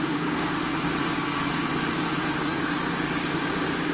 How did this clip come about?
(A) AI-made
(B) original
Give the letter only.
A